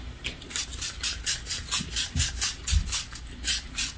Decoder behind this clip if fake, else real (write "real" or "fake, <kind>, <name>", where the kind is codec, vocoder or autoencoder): real